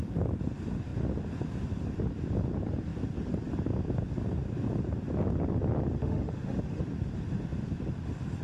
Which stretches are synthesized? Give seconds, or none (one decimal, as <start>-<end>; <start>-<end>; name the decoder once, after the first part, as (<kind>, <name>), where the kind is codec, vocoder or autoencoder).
6.0-6.8 (autoencoder, DAC-VAE)